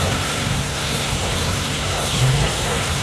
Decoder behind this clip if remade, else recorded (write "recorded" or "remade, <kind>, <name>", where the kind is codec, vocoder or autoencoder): remade, codec, SNAC